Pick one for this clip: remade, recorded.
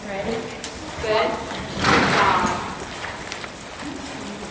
recorded